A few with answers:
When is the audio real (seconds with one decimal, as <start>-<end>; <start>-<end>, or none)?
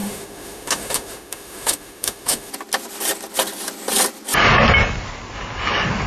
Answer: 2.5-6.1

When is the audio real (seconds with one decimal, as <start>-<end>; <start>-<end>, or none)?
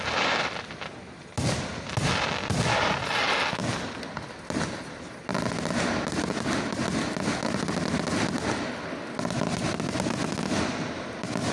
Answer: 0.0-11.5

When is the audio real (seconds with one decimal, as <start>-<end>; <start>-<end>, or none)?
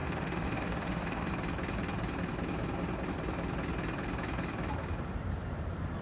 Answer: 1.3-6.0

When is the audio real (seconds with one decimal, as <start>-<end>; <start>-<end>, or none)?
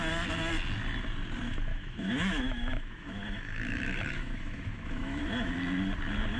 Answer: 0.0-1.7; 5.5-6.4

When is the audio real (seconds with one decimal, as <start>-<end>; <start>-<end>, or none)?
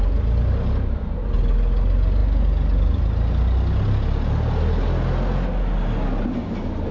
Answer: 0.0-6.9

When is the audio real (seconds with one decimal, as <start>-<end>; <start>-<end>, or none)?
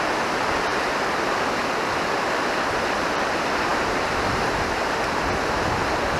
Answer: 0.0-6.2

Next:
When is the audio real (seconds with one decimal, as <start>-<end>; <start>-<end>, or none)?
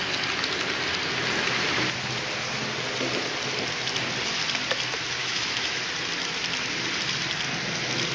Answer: 0.0-5.2; 5.8-8.1